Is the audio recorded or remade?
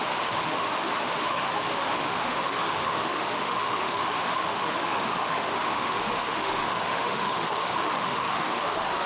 remade